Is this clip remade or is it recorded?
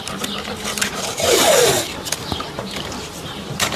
remade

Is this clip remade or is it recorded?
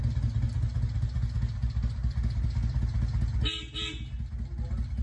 recorded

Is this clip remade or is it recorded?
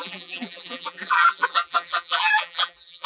remade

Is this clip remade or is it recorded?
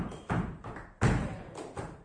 recorded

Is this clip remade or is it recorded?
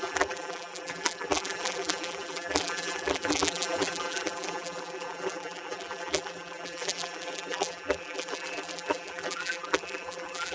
remade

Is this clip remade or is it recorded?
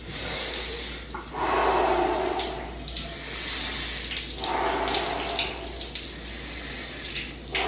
recorded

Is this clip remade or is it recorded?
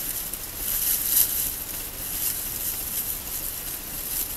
recorded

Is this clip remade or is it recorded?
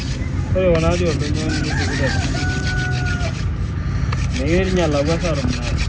recorded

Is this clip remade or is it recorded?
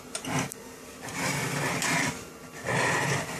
recorded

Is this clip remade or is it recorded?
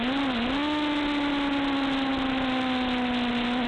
recorded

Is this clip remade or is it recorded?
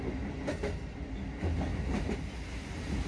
recorded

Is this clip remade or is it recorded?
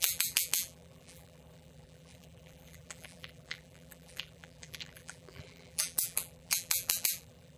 remade